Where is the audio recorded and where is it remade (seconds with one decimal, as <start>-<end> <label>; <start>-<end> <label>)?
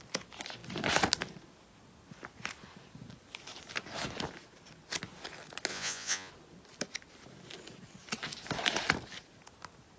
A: 0.0-5.7 recorded; 5.7-6.3 remade; 6.3-10.0 recorded